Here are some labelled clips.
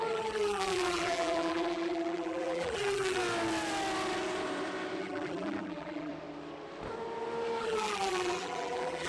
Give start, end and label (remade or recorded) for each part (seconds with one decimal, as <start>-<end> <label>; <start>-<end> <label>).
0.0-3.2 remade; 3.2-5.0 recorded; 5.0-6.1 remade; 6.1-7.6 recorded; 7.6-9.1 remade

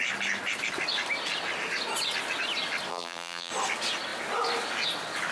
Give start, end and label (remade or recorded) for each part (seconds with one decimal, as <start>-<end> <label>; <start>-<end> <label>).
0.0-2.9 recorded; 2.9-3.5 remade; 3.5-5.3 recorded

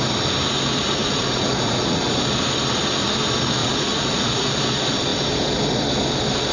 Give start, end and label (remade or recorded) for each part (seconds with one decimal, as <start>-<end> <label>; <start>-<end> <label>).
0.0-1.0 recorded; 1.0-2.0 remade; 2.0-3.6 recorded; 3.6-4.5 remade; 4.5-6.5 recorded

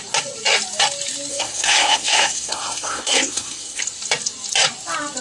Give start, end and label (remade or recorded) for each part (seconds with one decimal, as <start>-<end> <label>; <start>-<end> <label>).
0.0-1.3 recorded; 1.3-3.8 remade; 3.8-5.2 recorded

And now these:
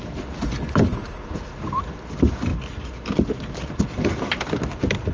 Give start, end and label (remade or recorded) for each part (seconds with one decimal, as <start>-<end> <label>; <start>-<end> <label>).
0.0-0.9 recorded; 0.9-1.7 remade; 1.7-5.1 recorded

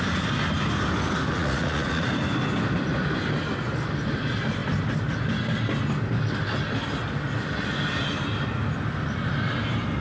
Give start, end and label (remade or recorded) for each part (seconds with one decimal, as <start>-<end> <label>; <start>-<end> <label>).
0.0-1.3 recorded; 1.3-2.1 remade; 2.1-10.0 recorded